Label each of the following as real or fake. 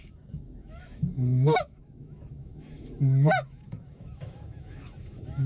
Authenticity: fake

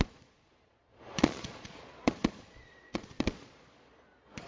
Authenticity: fake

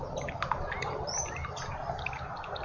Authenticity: real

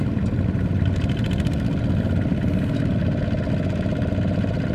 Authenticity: real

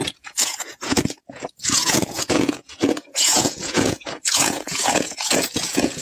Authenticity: fake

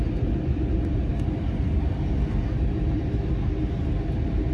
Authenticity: real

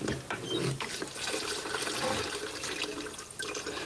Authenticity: real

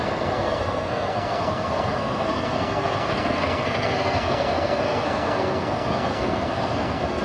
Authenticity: fake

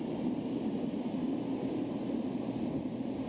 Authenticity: fake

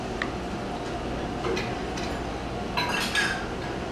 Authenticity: real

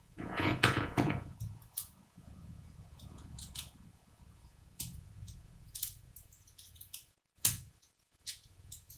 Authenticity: fake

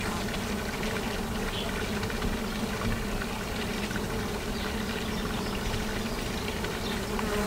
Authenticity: real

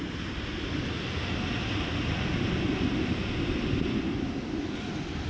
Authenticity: real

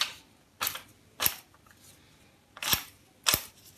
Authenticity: real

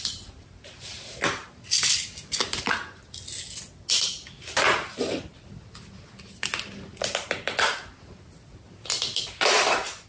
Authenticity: real